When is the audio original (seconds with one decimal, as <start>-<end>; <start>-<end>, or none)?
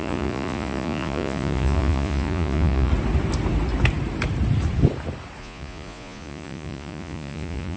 2.9-5.4